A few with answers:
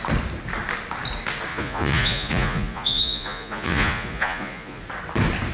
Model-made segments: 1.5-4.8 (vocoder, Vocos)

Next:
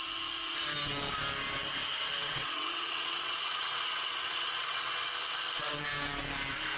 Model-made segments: 2.2-5.1 (vocoder, WaveNeXt)

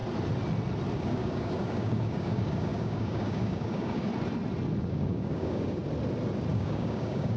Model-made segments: 1.0-4.1 (codec, DAC); 4.8-5.8; 6.5-7.4

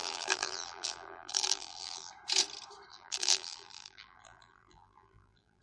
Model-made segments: 0.0-2.1 (vocoder, BigVGAN v2); 2.9-5.6